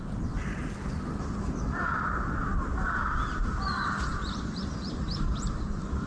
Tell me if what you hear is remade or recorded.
remade